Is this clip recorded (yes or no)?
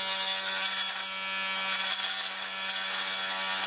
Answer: yes